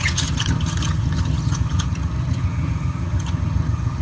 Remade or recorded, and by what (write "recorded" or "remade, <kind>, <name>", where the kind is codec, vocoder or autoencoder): remade, vocoder, HiFi-GAN